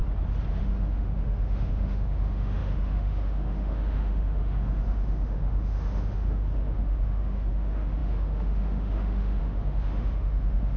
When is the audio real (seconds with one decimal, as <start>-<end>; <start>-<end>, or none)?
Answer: 0.0-0.6

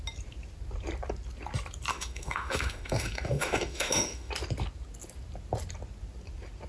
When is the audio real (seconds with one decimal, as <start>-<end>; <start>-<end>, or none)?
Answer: 0.0-1.9; 4.3-6.7

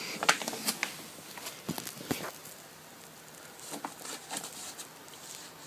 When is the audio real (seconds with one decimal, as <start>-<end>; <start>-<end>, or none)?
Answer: 0.0-5.7

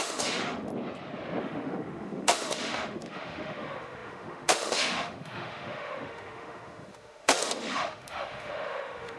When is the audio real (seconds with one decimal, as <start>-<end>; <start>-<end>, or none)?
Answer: 0.7-1.4

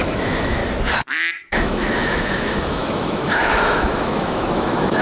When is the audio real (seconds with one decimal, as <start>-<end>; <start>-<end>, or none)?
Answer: 0.6-1.3

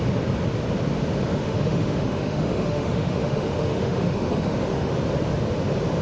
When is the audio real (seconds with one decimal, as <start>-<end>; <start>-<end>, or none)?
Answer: 0.0-1.3; 4.9-6.0

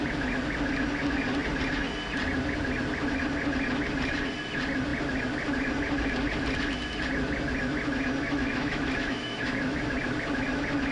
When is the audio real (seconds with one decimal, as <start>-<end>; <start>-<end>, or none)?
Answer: 0.0-8.2; 9.8-10.9